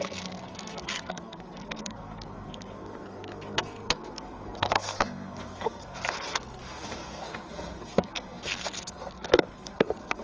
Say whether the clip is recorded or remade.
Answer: remade